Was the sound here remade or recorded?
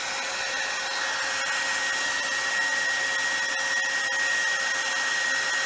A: recorded